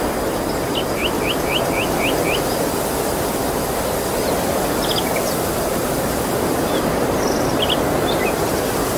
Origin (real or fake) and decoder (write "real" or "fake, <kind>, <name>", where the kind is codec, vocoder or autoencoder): real